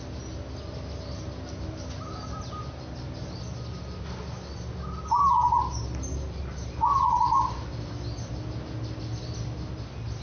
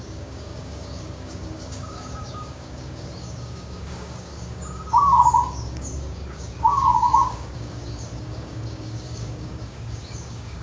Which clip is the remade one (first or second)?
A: second